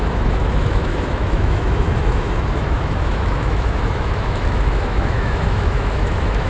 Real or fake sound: fake